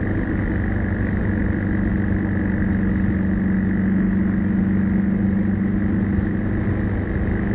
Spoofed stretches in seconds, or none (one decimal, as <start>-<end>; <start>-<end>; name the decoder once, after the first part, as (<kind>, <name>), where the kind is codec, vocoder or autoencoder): none

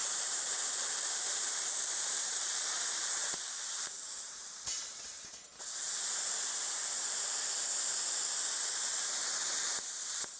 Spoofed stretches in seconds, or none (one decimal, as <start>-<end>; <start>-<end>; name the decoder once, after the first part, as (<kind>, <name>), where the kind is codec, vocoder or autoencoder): 0.0-5.2 (vocoder, BigVGAN v2)